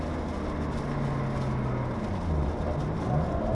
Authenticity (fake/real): real